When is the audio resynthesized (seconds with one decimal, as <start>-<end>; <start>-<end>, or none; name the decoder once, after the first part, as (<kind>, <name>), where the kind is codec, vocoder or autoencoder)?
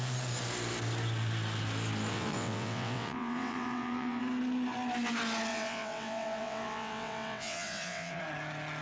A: 2.1-4.2 (vocoder, WaveNeXt); 5.5-8.2